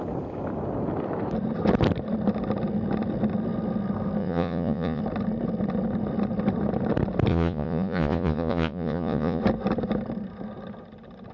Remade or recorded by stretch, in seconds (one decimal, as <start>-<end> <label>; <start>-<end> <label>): 0.0-4.2 recorded; 4.2-5.0 remade; 5.0-7.3 recorded; 7.3-9.4 remade; 9.4-11.3 recorded